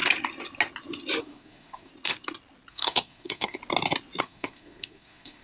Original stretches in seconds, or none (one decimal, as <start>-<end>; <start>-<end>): 0.0-1.2; 1.9-2.7; 3.6-4.2